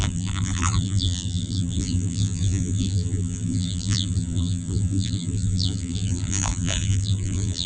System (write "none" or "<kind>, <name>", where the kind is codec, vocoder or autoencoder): vocoder, BigVGAN v2